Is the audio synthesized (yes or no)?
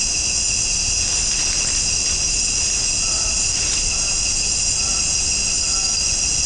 no